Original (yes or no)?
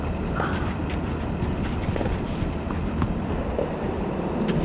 yes